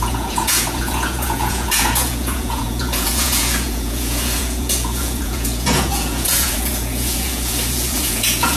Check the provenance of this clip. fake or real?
fake